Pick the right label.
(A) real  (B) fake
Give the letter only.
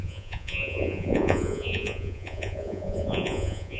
B